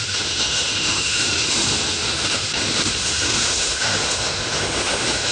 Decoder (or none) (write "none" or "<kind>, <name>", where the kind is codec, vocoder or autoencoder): autoencoder, DAC-VAE